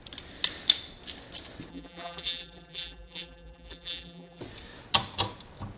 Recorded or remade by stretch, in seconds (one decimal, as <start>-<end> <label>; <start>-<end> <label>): 0.0-1.7 recorded; 1.7-4.4 remade; 4.4-5.8 recorded